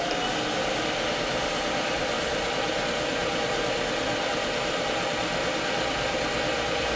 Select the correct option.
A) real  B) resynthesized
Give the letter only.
A